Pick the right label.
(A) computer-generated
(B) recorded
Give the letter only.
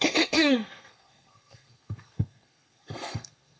A